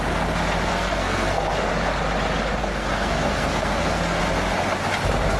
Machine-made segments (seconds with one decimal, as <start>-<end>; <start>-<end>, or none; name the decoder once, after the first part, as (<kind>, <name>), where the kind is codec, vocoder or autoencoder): 0.7-1.7 (codec, SNAC); 2.6-4.2